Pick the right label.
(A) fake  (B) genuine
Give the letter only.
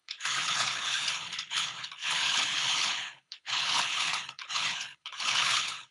A